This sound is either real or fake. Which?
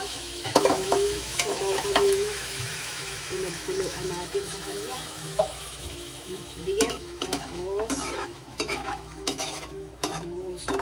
fake